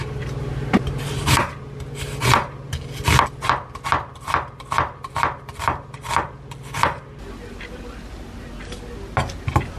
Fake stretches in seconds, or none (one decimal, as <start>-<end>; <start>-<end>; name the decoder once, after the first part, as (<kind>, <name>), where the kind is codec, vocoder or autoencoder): 0.0-1.4 (vocoder, BigVGAN v2)